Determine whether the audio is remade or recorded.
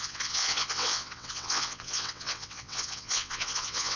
remade